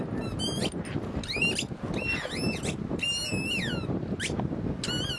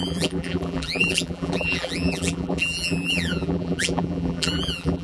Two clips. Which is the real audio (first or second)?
first